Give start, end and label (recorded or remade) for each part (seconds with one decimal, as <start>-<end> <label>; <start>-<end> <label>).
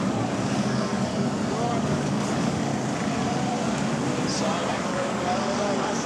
0.0-1.1 remade; 1.1-1.8 recorded; 1.8-2.7 remade; 2.7-4.7 recorded; 4.7-6.1 remade